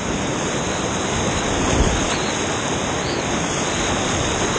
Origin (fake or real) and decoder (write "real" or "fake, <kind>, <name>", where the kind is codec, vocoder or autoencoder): real